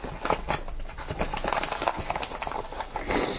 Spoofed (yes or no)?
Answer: no